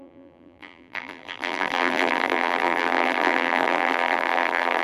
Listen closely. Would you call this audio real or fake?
fake